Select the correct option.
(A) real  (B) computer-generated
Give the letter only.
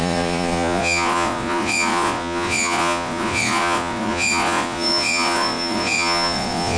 B